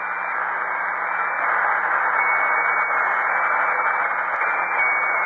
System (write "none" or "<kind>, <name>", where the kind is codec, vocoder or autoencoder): none